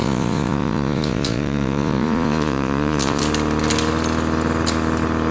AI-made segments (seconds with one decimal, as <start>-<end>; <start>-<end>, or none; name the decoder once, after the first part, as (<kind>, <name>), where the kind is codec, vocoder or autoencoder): 0.0-3.2 (vocoder, Vocos)